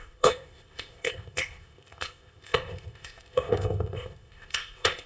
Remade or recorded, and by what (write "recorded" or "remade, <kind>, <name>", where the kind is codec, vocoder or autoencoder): remade, codec, ZipCodec